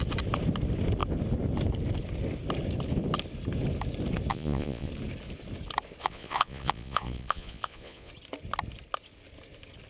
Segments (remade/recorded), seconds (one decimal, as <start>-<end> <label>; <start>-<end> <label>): 0.0-4.3 recorded; 4.3-4.9 remade; 4.9-6.0 recorded; 6.0-8.1 remade; 8.1-9.9 recorded